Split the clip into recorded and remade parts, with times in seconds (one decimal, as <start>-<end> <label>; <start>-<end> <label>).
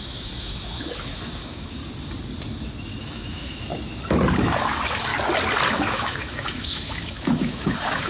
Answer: 0.0-1.8 remade; 1.8-3.0 recorded; 3.0-3.7 remade; 3.7-4.4 recorded; 4.4-5.1 remade; 5.1-5.7 recorded; 5.7-8.1 remade